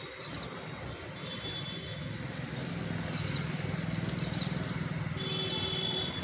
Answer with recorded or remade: recorded